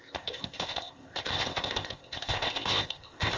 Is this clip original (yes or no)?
no